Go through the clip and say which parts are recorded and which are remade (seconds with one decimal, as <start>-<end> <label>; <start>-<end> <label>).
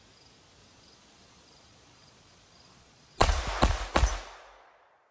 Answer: 0.0-0.6 recorded; 0.6-3.4 remade; 3.4-5.1 recorded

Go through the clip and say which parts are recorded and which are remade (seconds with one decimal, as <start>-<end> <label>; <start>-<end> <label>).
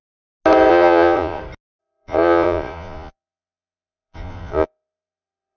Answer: 0.0-0.7 recorded; 0.7-1.4 remade; 1.4-1.8 recorded; 1.8-5.6 remade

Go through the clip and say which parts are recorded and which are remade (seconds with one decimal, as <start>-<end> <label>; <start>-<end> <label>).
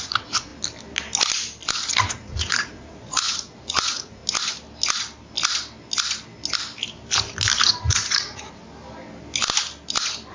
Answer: 0.0-0.5 remade; 0.5-2.1 recorded; 2.1-4.2 remade; 4.2-7.8 recorded; 7.8-8.6 remade; 8.6-10.3 recorded